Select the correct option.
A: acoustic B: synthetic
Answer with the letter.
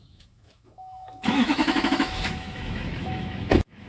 B